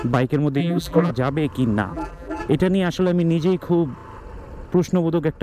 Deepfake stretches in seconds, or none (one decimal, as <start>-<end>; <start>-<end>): 0.6-1.1; 1.9-2.4